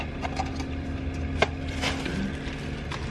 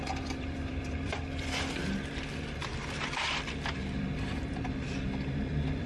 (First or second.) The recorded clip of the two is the first